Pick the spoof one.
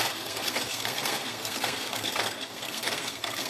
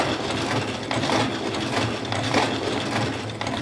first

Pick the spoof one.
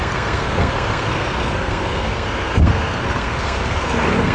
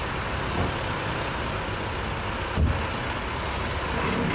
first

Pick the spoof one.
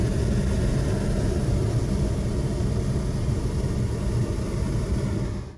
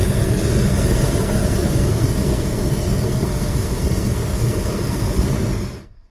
second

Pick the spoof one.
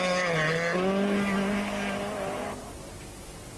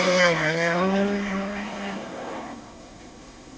second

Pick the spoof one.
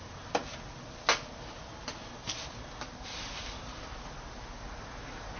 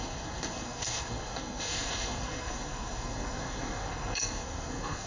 second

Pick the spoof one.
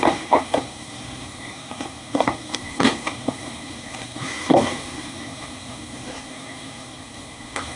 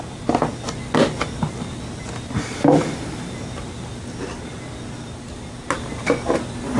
first